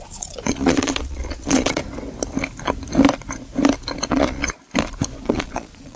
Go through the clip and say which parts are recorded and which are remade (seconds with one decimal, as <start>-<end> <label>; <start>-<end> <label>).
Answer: 0.0-1.8 remade; 1.8-4.1 recorded; 4.1-4.6 remade; 4.6-5.3 recorded; 5.3-6.0 remade